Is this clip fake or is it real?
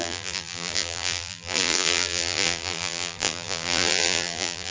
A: fake